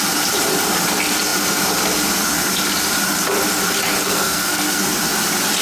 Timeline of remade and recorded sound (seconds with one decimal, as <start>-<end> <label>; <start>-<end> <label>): 0.0-4.1 recorded; 4.1-4.8 remade; 4.8-5.6 recorded